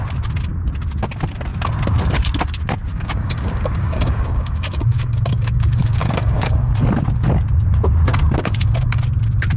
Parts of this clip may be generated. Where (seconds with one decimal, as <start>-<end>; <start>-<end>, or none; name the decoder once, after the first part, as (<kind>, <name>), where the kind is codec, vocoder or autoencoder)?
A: 2.9-6.7 (codec, DAC); 8.1-9.0